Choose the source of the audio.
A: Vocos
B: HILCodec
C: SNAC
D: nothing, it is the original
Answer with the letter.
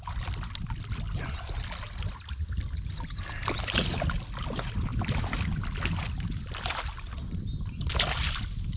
D